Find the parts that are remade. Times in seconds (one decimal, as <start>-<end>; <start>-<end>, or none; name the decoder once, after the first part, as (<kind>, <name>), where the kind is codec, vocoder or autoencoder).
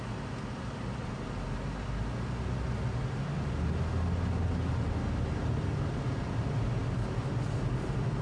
none